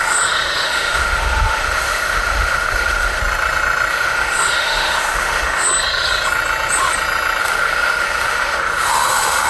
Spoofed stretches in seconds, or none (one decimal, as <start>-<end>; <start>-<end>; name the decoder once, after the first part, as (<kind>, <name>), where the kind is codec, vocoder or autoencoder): 0.0-3.2 (autoencoder, DAC-VAE); 3.9-5.7; 7.4-9.5